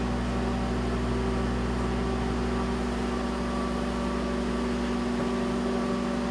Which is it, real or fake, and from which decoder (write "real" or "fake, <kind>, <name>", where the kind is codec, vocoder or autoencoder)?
real